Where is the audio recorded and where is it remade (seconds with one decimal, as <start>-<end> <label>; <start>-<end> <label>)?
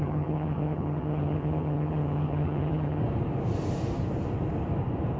0.0-3.0 remade; 3.0-5.2 recorded